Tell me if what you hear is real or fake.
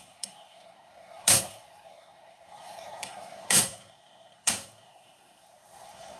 fake